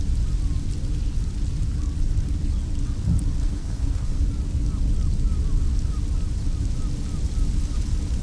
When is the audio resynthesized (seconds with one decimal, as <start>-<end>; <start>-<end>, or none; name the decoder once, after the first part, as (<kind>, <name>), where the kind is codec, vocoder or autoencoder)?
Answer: 3.4-4.2 (codec, SNAC)